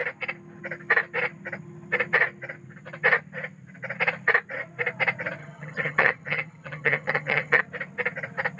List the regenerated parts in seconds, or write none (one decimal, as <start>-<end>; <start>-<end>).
5.4-7.6